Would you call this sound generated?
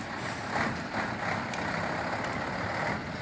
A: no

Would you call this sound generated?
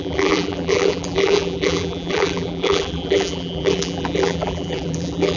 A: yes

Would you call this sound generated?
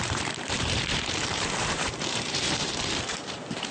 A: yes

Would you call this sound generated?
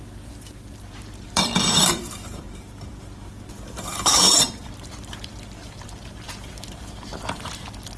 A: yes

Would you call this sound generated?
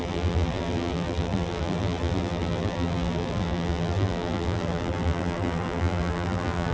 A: yes